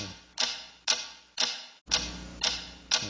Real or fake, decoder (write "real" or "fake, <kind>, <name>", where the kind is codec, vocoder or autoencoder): real